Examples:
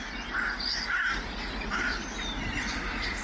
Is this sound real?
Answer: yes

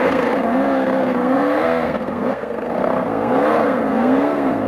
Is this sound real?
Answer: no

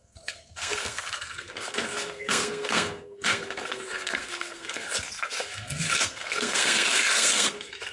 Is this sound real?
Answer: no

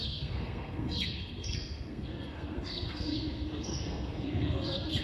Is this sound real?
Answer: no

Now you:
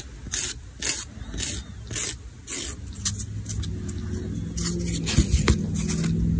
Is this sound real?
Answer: yes